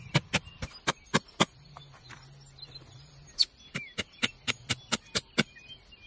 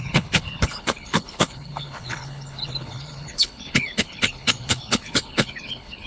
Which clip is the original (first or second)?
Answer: first